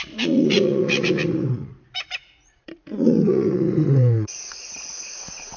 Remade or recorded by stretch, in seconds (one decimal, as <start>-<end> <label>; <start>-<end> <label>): 0.0-5.6 remade

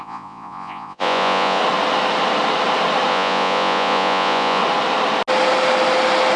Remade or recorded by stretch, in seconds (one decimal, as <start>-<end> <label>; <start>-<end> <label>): 0.0-1.6 remade; 1.6-3.1 recorded; 3.1-4.6 remade; 4.6-6.4 recorded

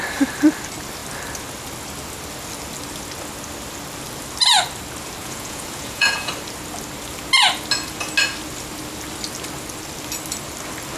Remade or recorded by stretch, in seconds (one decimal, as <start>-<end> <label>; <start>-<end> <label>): 0.0-5.2 recorded; 5.2-6.3 remade; 6.3-11.0 recorded